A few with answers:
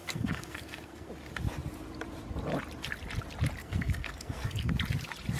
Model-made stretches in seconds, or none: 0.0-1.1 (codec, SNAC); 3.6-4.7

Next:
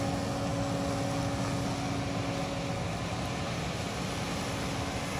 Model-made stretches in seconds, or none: none

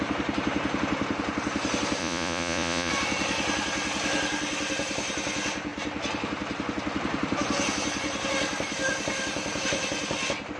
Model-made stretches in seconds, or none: 2.0-2.9 (vocoder, Vocos)

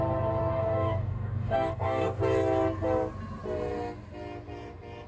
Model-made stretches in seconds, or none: 0.4-2.2 (codec, DAC)

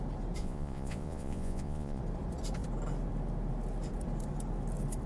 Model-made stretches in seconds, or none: 0.4-2.0 (vocoder, Vocos)